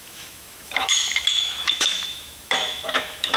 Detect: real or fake fake